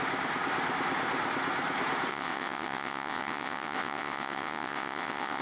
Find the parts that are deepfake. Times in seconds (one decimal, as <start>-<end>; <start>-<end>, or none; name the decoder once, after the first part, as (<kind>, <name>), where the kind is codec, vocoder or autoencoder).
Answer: 2.1-5.4 (vocoder, WaveNeXt)

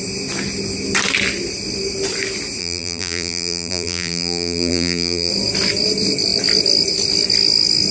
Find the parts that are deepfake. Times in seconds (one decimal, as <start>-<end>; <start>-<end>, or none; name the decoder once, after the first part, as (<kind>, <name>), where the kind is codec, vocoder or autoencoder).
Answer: 2.6-5.3 (vocoder, BigVGAN v2)

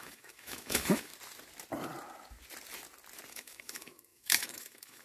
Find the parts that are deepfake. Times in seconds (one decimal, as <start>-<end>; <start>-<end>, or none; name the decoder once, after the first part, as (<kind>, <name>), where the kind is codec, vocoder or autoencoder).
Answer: 0.0-1.1 (autoencoder, DAC-VAE); 3.3-5.0

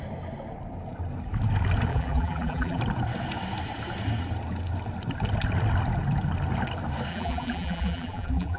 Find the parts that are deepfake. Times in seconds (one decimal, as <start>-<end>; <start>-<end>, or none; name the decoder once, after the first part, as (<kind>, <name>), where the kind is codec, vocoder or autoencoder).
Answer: 1.9-2.8 (vocoder, BigVGAN v2); 7.1-8.6

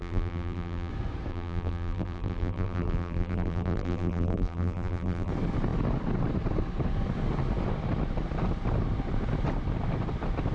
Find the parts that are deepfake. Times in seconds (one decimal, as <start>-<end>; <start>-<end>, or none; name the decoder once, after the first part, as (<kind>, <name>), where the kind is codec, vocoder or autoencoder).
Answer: 0.0-0.9 (vocoder, BigVGAN v2); 1.3-5.3

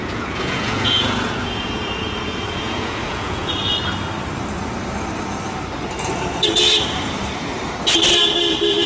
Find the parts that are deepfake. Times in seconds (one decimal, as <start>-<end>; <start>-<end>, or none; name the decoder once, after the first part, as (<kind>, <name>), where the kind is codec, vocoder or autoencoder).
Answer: 0.0-3.5 (vocoder, Vocos)

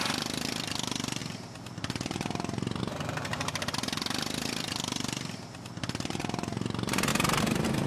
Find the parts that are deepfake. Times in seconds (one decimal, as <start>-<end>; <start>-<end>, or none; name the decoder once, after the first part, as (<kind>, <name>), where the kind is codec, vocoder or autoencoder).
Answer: 1.2-2.8 (vocoder, BigVGAN v2); 3.3-6.2; 7.1-7.9

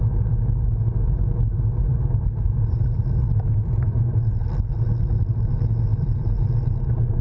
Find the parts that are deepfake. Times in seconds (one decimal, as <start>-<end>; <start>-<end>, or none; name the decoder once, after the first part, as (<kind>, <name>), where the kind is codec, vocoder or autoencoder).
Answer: 1.9-3.0 (vocoder, BigVGAN v2); 5.9-6.8